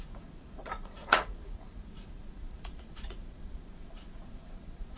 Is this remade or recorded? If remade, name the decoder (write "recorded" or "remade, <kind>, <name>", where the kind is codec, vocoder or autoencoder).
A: remade, vocoder, Vocos